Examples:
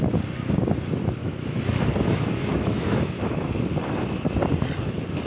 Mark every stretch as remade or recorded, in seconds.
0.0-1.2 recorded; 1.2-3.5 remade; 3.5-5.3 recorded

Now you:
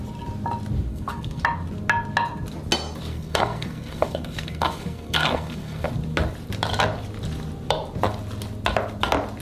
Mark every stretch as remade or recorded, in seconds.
0.0-0.9 recorded; 0.9-1.4 remade; 1.4-3.1 recorded; 3.1-5.9 remade; 5.9-9.4 recorded

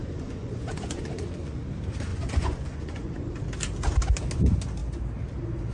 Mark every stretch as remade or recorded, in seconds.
0.0-1.6 remade; 1.6-2.1 recorded; 2.1-3.4 remade; 3.4-5.7 recorded

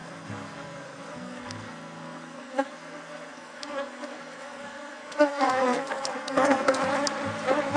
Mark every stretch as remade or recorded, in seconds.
0.0-6.8 remade; 6.8-7.8 recorded

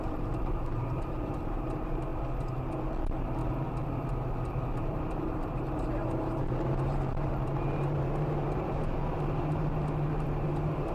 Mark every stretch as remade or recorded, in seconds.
0.0-2.1 remade; 2.1-3.0 recorded; 3.0-3.4 remade; 3.4-4.8 recorded; 4.8-10.9 remade

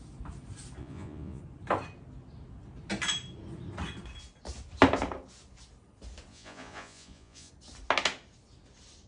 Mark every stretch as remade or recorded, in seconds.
0.0-0.8 recorded; 0.8-1.4 remade; 1.4-6.3 recorded; 6.3-7.5 remade; 7.5-9.1 recorded